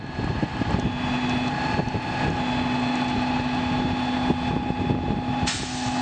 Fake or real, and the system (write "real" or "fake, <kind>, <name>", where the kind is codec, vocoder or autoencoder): real